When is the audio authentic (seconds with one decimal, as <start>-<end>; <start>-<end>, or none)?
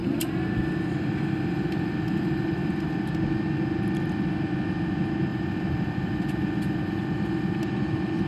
3.1-5.3; 7.6-8.3